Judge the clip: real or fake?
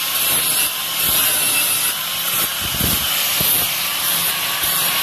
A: real